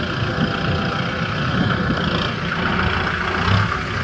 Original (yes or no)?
yes